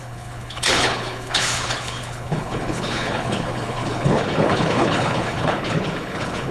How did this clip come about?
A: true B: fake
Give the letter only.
B